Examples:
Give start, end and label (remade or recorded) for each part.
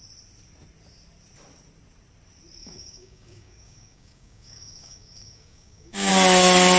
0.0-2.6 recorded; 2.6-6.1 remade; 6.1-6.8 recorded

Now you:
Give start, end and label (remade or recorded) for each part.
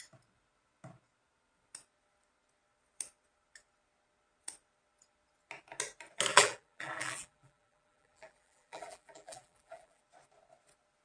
0.0-6.3 recorded; 6.3-10.0 remade; 10.0-11.0 recorded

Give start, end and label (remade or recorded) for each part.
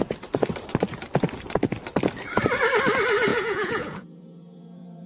0.0-3.3 recorded; 3.3-5.1 remade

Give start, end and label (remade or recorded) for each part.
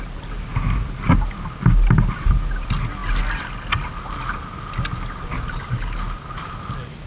0.0-7.1 recorded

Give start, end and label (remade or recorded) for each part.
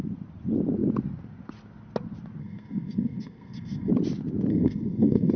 0.0-2.4 recorded; 2.4-3.9 remade; 3.9-4.5 recorded; 4.5-5.4 remade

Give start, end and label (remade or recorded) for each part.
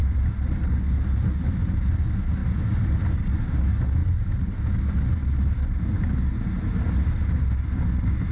0.0-8.3 recorded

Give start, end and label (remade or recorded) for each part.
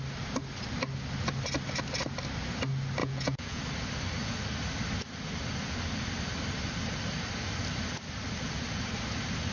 0.0-3.0 recorded; 3.0-3.6 remade; 3.6-9.5 recorded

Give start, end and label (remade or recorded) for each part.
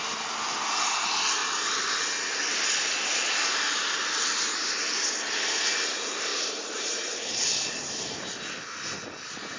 0.0-6.3 recorded; 6.3-8.4 remade; 8.4-9.6 recorded